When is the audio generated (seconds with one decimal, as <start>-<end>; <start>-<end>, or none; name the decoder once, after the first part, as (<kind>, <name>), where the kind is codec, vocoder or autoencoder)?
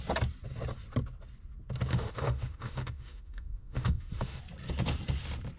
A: 1.9-4.4 (autoencoder, DAC-VAE)